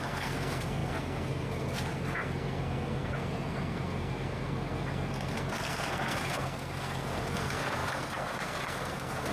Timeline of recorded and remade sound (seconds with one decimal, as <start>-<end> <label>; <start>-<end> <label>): 0.0-9.3 remade